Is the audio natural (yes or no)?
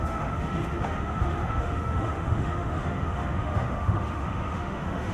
no